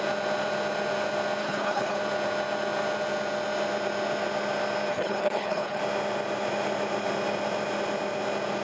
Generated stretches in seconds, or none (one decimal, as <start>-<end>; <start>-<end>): 1.4-2.0; 4.9-5.8